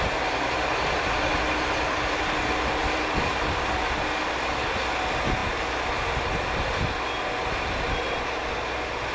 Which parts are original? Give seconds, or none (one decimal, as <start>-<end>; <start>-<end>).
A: 0.0-9.1